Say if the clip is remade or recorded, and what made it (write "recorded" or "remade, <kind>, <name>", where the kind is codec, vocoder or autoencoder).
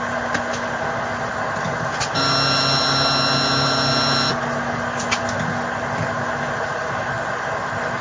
recorded